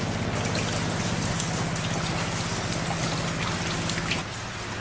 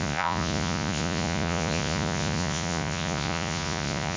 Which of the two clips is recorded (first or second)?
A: first